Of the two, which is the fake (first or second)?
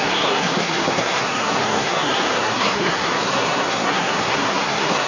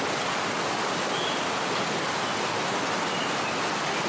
first